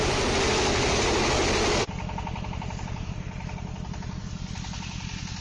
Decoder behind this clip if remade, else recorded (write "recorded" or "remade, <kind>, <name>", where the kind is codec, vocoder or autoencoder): recorded